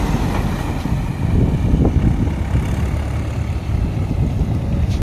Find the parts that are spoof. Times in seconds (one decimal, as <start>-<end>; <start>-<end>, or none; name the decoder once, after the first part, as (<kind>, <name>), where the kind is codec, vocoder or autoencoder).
none